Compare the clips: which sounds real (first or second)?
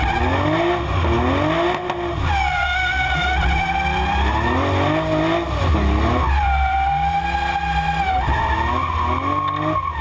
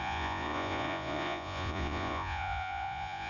first